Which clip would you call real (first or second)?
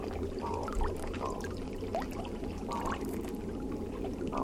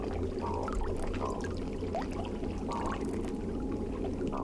second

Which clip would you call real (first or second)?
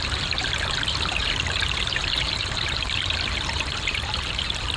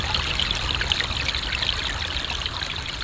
second